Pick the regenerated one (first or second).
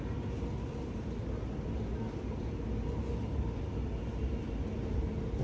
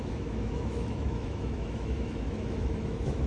second